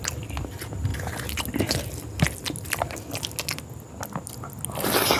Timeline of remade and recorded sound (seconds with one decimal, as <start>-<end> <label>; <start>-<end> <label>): 0.0-5.2 recorded